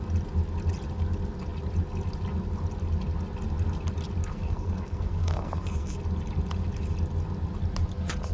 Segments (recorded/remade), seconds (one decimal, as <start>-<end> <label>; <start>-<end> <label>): 0.0-4.3 recorded; 4.3-6.0 remade; 6.0-8.3 recorded